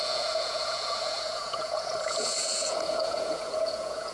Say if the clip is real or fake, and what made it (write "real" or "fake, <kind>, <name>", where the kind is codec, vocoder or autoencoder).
fake, vocoder, Vocos